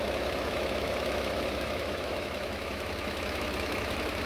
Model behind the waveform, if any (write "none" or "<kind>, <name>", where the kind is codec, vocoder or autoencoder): autoencoder, DAC-VAE